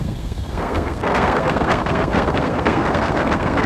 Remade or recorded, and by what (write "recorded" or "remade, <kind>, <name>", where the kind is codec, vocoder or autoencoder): remade, codec, SNAC